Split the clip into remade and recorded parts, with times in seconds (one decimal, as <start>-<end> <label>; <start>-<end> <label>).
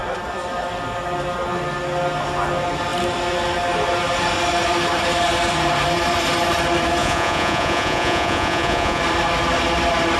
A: 0.0-7.0 recorded; 7.0-9.0 remade; 9.0-10.2 recorded